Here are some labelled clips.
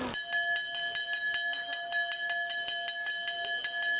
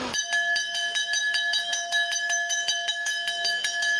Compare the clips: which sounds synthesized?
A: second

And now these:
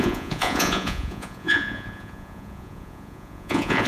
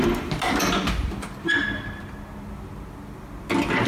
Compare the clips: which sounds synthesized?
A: first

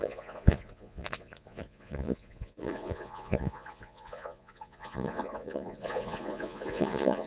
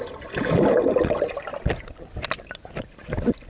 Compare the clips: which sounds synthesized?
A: first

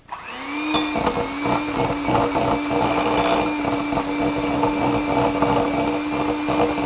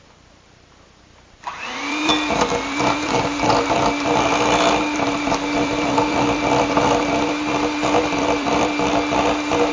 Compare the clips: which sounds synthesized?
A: second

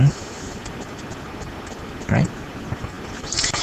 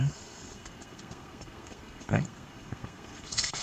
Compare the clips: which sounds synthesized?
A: second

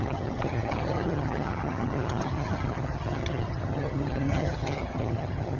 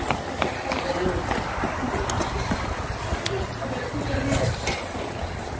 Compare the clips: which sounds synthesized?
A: first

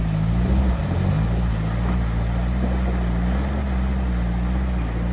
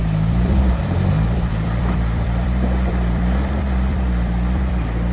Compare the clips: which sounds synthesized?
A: second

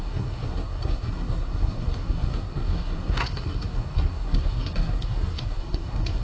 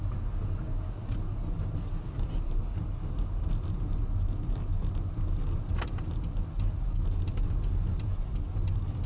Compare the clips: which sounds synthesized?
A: first